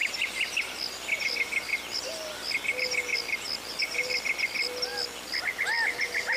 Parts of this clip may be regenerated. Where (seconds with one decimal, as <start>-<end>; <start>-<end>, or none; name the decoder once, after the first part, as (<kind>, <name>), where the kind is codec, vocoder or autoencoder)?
none